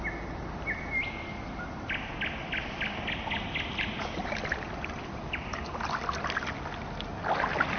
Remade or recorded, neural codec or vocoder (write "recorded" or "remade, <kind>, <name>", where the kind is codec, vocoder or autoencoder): recorded